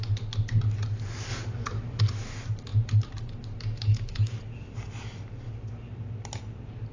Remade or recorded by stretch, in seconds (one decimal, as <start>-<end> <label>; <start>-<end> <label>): 0.0-3.9 recorded; 3.9-4.4 remade; 4.4-6.9 recorded